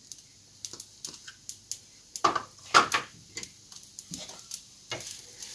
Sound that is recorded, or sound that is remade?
recorded